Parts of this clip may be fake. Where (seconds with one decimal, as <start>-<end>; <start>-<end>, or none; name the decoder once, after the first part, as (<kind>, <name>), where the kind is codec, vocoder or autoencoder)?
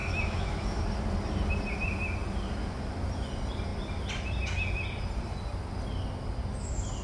0.0-0.8 (autoencoder, DAC-VAE)